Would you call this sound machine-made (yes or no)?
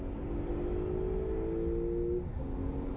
no